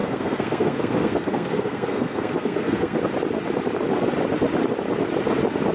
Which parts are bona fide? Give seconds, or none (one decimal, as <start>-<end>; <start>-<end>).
3.0-5.7